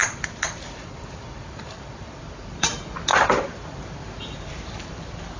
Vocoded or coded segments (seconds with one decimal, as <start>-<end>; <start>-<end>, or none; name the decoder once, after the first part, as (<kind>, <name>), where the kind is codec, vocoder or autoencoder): 0.0-2.7 (vocoder, BigVGAN v2); 3.1-5.4